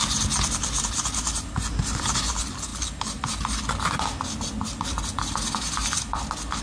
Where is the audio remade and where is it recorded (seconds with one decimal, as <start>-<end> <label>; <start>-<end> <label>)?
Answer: 0.0-6.6 recorded